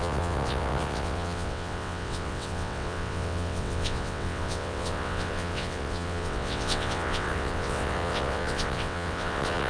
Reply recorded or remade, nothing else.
remade